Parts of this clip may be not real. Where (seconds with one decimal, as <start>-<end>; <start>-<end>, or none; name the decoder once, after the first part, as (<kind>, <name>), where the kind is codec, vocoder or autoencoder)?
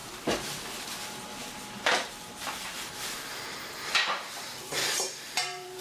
0.0-3.4 (vocoder, BigVGAN v2); 4.8-5.8